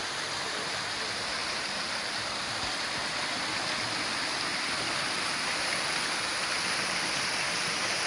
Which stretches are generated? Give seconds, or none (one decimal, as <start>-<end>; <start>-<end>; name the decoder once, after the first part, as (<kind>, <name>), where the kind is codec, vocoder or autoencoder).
1.4-2.8 (vocoder, BigVGAN v2)